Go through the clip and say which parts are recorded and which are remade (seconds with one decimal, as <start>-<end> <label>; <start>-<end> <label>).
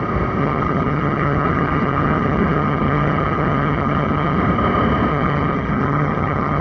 0.0-0.4 recorded; 0.4-4.4 remade; 4.4-5.1 recorded; 5.1-6.6 remade